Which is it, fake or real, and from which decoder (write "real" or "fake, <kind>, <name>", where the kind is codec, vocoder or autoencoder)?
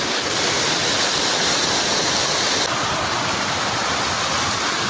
real